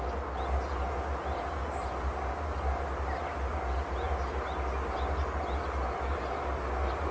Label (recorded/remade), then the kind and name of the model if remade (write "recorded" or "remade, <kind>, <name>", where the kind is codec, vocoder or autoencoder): recorded